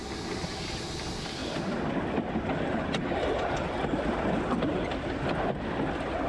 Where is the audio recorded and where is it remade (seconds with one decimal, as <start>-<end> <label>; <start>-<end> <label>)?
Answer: 0.0-6.3 recorded